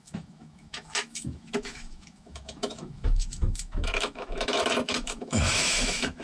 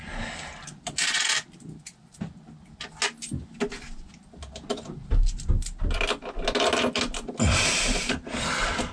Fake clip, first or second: first